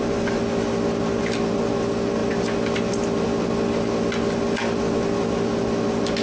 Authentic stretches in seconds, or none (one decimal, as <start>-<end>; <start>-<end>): 0.0-6.2